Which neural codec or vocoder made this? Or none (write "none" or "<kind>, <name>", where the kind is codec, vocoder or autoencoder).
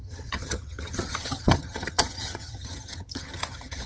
vocoder, HiFi-GAN